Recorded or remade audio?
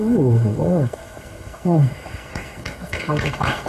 remade